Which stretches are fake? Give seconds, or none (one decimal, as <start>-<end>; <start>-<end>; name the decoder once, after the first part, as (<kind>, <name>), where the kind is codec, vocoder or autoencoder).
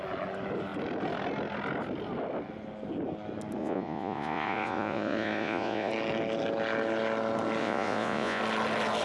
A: 3.6-5.9 (vocoder, Vocos); 7.6-8.4